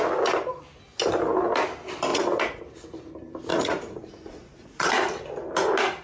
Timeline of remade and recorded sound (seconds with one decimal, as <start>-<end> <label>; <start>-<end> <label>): 0.0-2.1 recorded; 2.1-2.6 remade; 2.6-3.5 recorded; 3.5-4.9 remade; 4.9-6.0 recorded